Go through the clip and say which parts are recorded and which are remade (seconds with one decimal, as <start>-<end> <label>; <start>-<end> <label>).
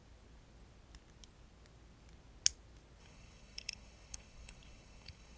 0.0-3.0 recorded; 3.0-5.4 remade